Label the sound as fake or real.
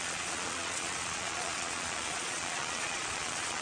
fake